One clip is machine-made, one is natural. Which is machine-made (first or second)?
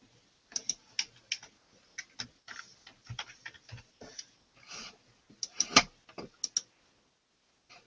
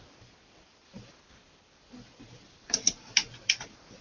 second